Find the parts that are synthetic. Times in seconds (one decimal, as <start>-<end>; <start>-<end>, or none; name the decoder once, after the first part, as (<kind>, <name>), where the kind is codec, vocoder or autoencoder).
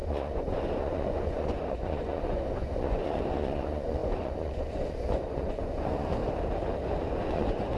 0.0-6.2 (vocoder, Vocos); 7.0-7.8